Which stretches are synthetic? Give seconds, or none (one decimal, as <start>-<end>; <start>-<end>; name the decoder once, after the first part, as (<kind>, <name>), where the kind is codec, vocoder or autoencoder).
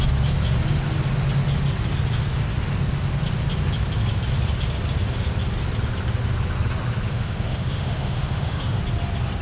7.1-8.8 (autoencoder, DAC-VAE)